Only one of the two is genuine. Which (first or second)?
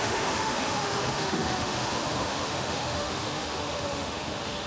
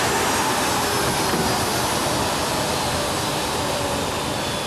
second